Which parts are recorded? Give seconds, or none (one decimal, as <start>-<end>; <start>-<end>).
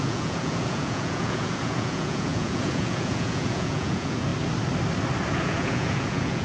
4.3-5.3